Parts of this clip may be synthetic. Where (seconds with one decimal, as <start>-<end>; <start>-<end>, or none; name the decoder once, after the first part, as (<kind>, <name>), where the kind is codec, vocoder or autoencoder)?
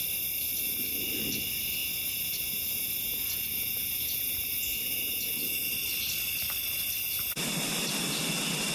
1.8-5.7 (vocoder, Vocos)